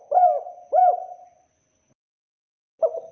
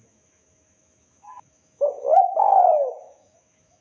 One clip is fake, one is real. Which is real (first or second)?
first